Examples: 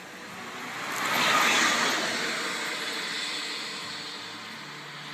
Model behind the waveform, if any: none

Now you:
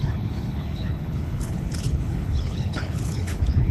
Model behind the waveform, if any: codec, HILCodec